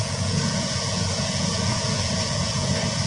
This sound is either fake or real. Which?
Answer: fake